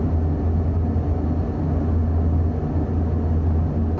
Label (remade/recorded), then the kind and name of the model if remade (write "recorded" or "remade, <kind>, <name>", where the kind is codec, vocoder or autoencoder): recorded